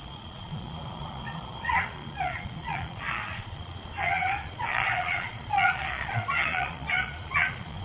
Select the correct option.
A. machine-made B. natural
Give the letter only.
A